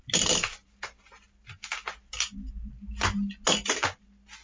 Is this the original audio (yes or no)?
yes